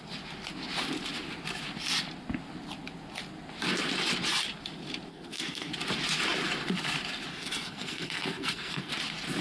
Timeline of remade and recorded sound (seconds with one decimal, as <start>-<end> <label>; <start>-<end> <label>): 0.0-5.1 recorded; 5.1-5.7 remade; 5.7-7.3 recorded; 7.3-8.9 remade; 8.9-9.4 recorded